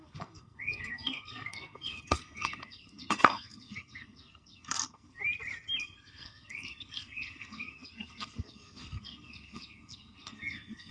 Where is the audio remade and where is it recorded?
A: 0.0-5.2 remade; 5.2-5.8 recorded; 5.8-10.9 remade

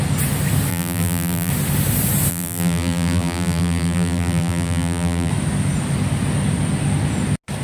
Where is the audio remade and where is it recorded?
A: 0.0-0.7 recorded; 0.7-1.5 remade; 1.5-2.3 recorded; 2.3-5.3 remade; 5.3-7.6 recorded

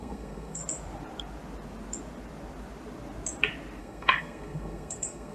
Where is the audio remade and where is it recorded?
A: 0.0-0.6 remade; 0.6-3.8 recorded; 3.8-5.3 remade